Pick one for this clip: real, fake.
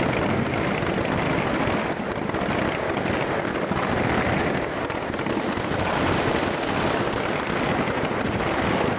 real